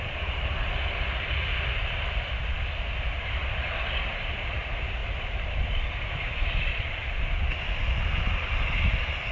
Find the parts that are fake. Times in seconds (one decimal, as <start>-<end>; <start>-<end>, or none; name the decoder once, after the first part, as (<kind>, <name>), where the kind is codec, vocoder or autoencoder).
2.5-3.7 (vocoder, BigVGAN v2); 5.0-7.8